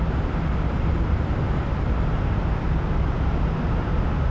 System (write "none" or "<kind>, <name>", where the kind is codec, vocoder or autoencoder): none